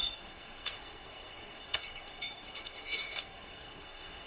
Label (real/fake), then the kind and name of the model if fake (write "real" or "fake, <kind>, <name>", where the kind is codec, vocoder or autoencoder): fake, codec, SNAC